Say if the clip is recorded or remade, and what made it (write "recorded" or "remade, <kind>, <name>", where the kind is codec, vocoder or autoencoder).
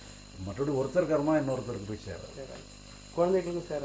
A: recorded